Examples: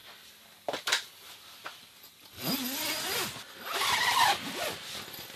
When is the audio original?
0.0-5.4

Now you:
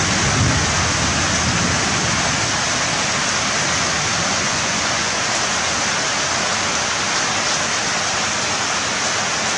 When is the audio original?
0.0-4.3; 5.2-9.6

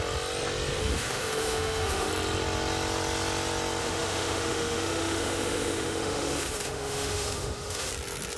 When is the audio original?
0.0-0.8; 2.1-3.8; 7.9-8.4

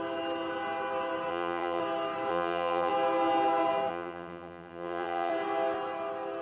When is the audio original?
0.0-1.3; 1.8-2.3; 2.9-3.9; 5.3-6.4

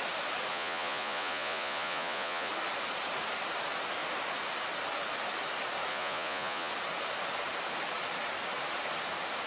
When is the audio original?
0.0-0.5; 2.5-5.9; 6.7-9.5

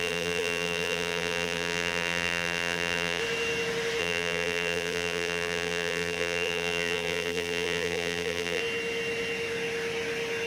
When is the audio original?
3.2-4.0; 8.6-10.5